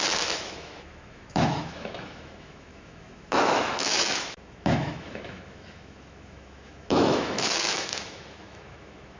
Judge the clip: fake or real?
fake